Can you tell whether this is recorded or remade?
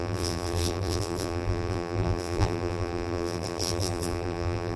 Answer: remade